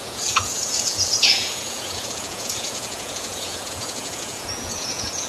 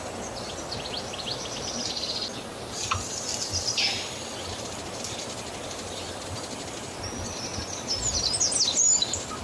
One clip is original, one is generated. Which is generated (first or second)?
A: first